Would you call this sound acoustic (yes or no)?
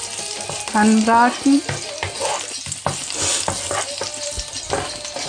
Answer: yes